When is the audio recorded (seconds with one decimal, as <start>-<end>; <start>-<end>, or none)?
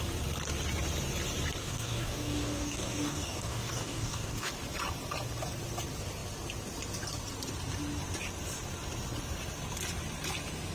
0.0-1.6; 4.5-10.7